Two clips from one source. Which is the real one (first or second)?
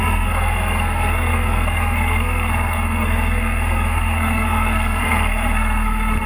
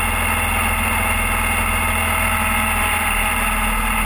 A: second